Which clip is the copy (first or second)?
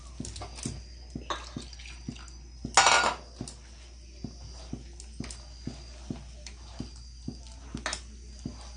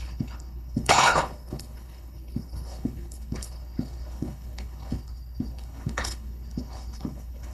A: second